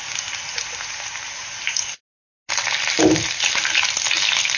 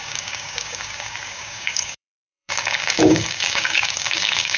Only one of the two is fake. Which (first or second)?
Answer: second